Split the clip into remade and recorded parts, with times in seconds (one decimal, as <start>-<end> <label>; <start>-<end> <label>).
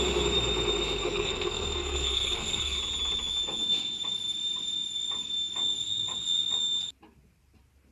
0.0-1.0 recorded; 1.0-2.8 remade; 2.8-7.9 recorded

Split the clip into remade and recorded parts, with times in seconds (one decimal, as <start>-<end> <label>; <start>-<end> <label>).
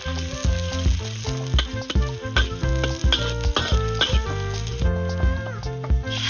0.0-6.3 recorded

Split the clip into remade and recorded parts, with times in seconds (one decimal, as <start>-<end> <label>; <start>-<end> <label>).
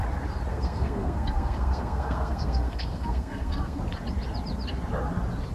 0.0-0.5 recorded; 0.5-3.8 remade; 3.8-5.5 recorded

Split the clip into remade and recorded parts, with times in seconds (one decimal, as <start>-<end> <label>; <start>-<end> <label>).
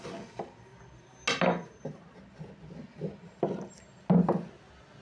0.0-5.0 recorded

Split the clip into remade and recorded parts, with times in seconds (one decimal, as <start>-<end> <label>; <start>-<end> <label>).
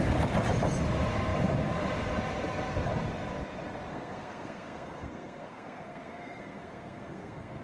0.0-3.9 recorded; 3.9-7.6 remade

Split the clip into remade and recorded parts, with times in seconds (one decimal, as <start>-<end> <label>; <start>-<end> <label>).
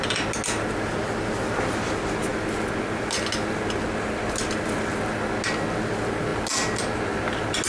0.0-7.7 recorded